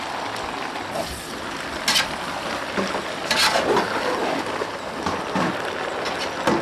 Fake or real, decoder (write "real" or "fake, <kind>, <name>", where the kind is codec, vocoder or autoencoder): real